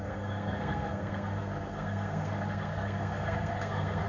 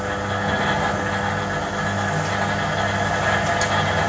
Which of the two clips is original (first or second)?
second